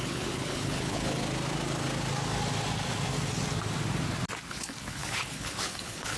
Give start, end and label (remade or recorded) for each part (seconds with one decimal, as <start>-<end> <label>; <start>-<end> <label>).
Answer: 0.0-1.2 remade; 1.2-4.5 recorded; 4.5-6.2 remade